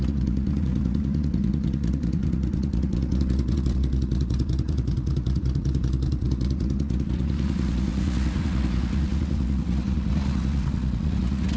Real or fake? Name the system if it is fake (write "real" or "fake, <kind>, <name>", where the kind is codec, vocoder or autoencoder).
fake, vocoder, Vocos